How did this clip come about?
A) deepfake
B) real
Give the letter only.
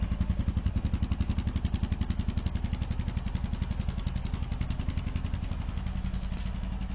B